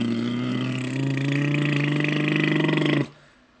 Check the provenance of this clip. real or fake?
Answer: real